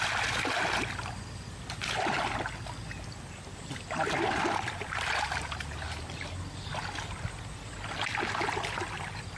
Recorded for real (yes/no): yes